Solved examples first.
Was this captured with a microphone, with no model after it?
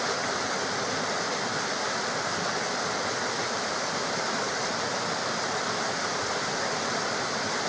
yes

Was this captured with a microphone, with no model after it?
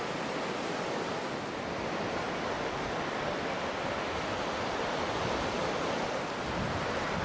yes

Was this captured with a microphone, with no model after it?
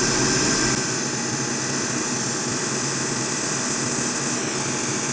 yes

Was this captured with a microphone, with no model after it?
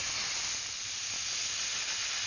yes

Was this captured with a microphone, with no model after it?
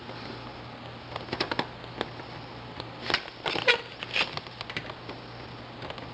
yes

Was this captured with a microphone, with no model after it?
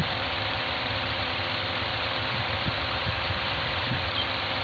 no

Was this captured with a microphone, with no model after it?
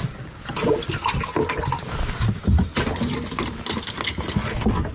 yes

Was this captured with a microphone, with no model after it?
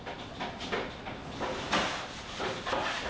yes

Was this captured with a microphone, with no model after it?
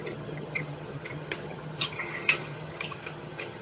no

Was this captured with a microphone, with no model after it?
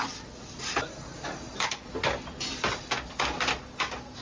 yes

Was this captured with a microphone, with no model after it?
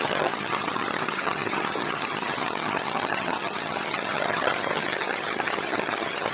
no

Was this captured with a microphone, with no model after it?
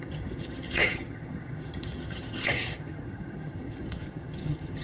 no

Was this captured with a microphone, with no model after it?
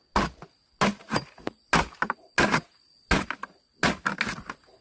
yes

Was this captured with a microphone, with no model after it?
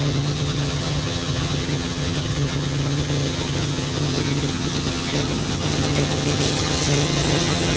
no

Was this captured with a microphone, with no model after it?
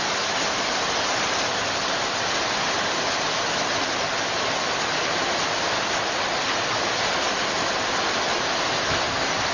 yes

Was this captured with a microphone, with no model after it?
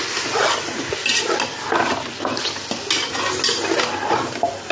yes